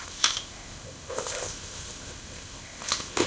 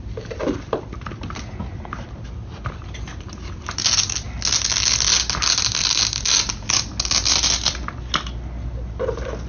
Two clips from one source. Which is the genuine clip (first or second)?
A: second